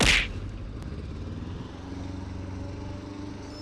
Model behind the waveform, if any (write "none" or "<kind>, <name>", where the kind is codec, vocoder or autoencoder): none